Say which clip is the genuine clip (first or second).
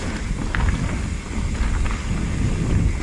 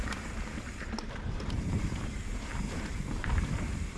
first